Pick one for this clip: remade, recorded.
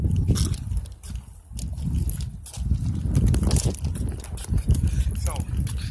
recorded